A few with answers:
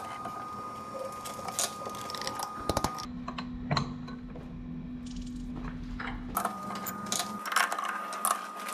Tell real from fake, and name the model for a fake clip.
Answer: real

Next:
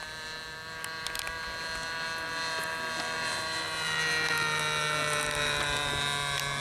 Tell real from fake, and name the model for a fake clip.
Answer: real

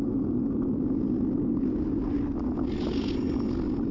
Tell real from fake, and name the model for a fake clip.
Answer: real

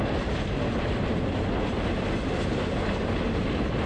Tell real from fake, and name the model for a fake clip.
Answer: real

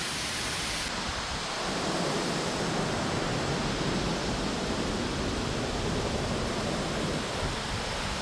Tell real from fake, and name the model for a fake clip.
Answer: real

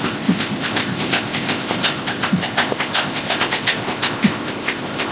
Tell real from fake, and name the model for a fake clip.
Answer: fake, codec, ZipCodec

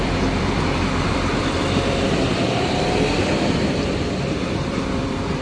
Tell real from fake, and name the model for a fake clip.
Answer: fake, vocoder, BigVGAN v2